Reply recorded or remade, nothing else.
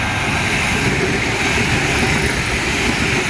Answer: recorded